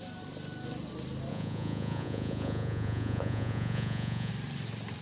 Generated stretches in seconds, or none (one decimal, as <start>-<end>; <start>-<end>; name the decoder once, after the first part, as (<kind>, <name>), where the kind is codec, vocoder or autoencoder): 1.3-4.3 (vocoder, Vocos)